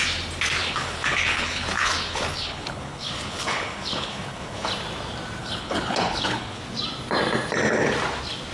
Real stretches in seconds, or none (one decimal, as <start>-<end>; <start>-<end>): 0.0-0.6; 4.7-5.4; 6.6-8.5